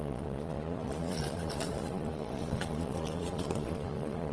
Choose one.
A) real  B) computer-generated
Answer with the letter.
B